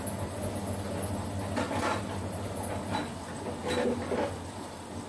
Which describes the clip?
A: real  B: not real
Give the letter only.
A